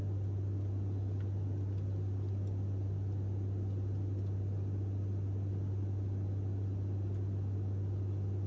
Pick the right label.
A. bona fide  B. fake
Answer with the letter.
A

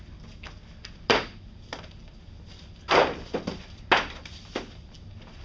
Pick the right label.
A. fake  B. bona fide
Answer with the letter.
B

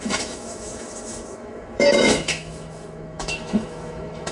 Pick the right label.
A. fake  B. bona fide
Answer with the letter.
A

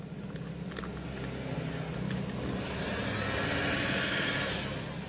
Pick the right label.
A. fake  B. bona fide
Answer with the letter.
B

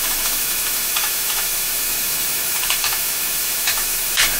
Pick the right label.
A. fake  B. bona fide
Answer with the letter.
A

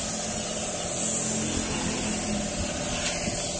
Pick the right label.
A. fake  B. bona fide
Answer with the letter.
B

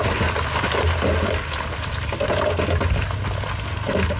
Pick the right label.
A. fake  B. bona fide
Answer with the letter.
B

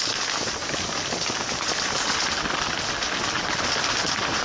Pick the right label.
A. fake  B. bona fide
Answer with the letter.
B